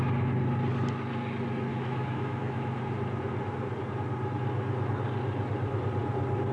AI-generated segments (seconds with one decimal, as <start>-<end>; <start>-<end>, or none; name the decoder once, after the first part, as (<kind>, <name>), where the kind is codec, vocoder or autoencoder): 1.7-2.8 (autoencoder, DAC-VAE)